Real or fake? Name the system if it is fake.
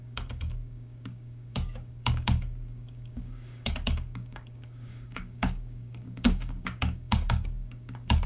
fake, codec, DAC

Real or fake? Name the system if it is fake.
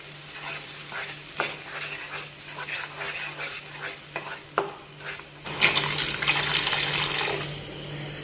real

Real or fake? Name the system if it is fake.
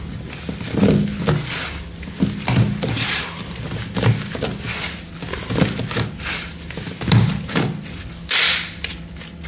real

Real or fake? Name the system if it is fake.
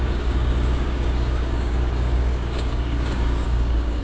fake, codec, DAC